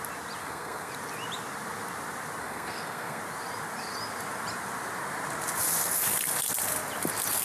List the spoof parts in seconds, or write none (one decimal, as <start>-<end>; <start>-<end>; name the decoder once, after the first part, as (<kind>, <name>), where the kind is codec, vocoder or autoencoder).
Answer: 0.4-0.9 (codec, SNAC); 2.4-3.2

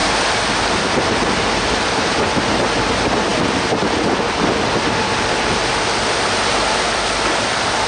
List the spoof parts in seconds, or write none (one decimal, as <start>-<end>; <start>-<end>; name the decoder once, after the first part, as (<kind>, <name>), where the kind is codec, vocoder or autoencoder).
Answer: none